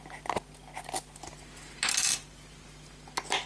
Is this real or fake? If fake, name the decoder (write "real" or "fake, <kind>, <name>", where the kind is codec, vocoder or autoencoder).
real